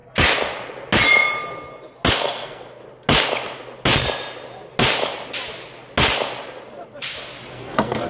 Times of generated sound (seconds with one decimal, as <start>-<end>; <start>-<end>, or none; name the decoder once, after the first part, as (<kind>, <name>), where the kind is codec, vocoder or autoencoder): 2.1-2.8 (codec, SNAC); 7.5-8.1